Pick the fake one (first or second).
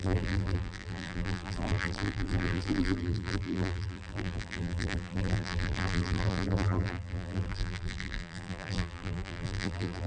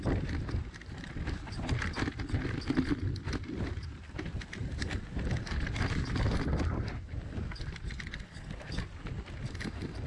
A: first